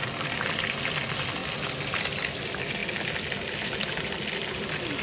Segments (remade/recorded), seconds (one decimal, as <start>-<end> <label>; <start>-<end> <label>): 0.0-5.0 recorded